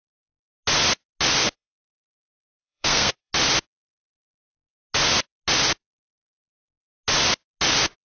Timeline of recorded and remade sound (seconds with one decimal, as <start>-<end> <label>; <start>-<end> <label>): 0.0-1.4 recorded; 1.4-3.3 remade; 3.3-8.0 recorded